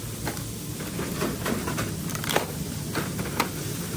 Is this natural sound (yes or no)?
yes